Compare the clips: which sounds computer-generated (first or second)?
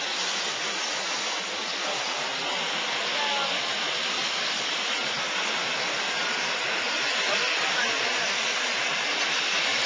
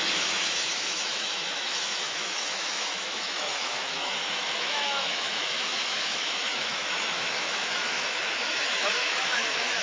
second